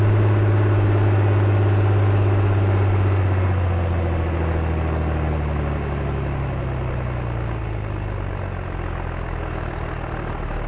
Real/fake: real